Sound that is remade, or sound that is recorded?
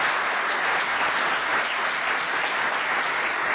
recorded